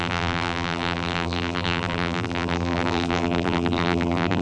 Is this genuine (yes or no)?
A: no